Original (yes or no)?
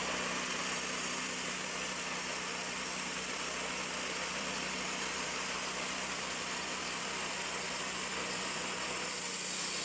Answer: no